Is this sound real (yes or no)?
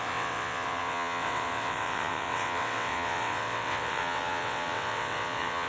no